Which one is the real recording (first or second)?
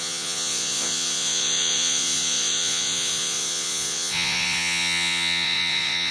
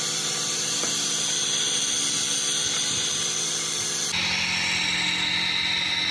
second